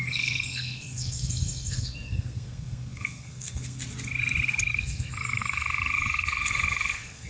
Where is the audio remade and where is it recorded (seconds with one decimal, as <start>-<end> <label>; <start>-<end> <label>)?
0.0-3.8 remade; 3.8-4.7 recorded; 4.7-7.3 remade